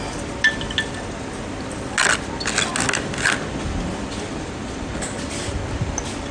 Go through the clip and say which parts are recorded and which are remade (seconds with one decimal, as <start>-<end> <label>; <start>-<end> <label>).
0.0-6.3 recorded

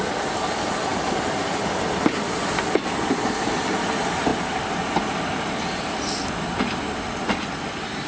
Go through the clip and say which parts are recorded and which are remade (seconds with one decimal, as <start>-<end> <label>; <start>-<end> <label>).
0.0-8.1 recorded

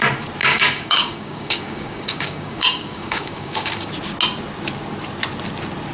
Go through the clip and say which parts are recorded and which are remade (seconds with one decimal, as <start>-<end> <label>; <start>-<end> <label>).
0.0-0.4 recorded; 0.4-3.9 remade; 3.9-5.9 recorded

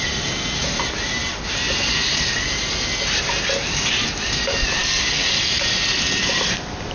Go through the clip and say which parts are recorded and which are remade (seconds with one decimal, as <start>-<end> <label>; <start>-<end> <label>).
0.0-6.9 recorded

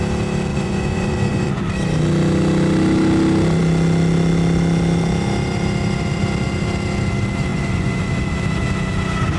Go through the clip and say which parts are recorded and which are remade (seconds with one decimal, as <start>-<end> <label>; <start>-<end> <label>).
0.0-0.5 recorded; 0.5-1.6 remade; 1.6-7.5 recorded; 7.5-8.1 remade; 8.1-9.4 recorded

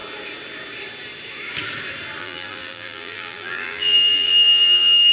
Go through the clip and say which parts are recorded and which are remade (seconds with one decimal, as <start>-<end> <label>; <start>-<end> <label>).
0.0-2.2 recorded; 2.2-5.1 remade

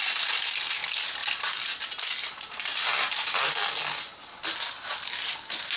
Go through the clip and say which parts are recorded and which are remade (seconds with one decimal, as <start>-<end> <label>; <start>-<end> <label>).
0.0-5.8 recorded

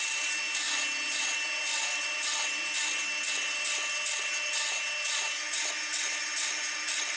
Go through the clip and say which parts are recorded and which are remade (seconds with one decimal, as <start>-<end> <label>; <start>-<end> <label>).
0.0-7.2 recorded